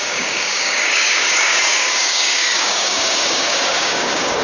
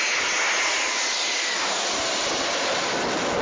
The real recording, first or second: second